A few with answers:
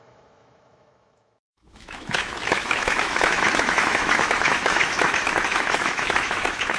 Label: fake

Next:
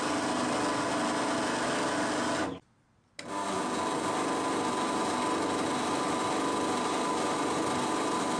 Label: real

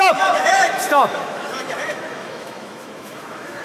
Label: fake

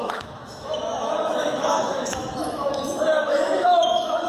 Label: fake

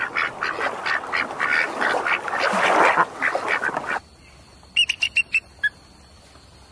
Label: real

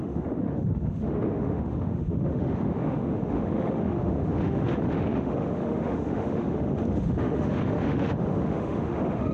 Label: fake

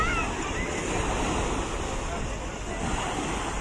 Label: real